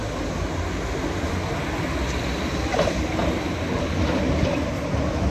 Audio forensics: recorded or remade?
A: recorded